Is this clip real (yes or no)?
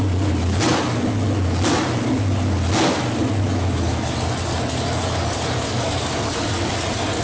yes